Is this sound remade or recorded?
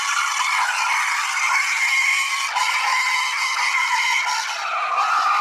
recorded